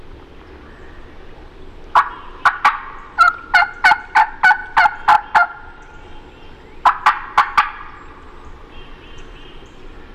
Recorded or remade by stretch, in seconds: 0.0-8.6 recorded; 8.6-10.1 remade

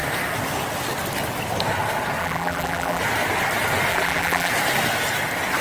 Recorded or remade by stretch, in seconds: 0.0-2.2 recorded; 2.2-3.0 remade; 3.0-3.9 recorded; 3.9-4.5 remade; 4.5-5.6 recorded

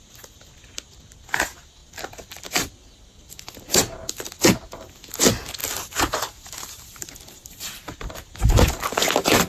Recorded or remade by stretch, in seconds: 0.0-5.6 recorded; 5.6-8.1 remade; 8.1-9.5 recorded

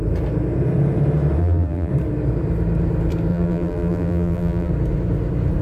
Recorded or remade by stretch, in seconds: 0.0-1.4 recorded; 1.4-1.9 remade; 1.9-3.3 recorded; 3.3-4.7 remade; 4.7-5.6 recorded

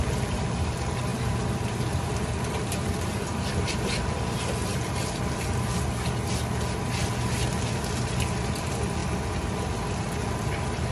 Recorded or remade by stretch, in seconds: 0.0-4.6 remade; 4.6-8.0 recorded; 8.0-9.0 remade; 9.0-10.0 recorded; 10.0-10.9 remade